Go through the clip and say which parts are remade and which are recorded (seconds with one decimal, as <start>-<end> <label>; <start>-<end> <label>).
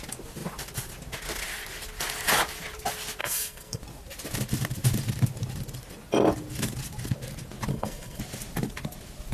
0.0-3.2 recorded; 3.2-3.8 remade; 3.8-7.7 recorded; 7.7-8.2 remade; 8.2-9.3 recorded